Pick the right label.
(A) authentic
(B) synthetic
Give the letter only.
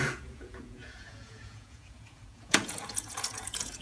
B